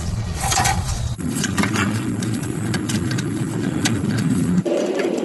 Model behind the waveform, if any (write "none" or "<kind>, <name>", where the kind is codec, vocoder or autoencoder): vocoder, Vocos